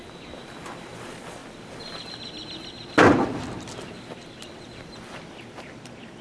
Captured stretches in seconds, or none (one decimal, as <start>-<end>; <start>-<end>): 0.0-6.2